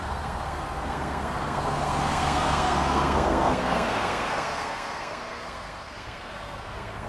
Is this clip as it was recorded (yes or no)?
no